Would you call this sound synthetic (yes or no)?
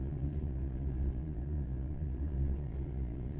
yes